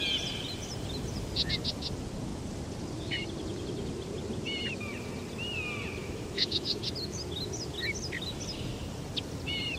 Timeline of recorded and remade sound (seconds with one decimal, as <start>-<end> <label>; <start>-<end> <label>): 0.0-6.0 recorded; 6.0-6.8 remade; 6.8-9.8 recorded